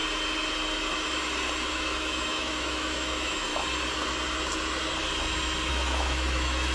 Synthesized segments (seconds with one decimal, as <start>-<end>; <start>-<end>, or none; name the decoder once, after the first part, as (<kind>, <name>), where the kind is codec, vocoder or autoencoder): 1.7-3.5 (autoencoder, DAC-VAE); 5.7-6.7